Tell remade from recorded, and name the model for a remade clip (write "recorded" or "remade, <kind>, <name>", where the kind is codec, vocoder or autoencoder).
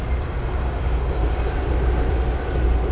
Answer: recorded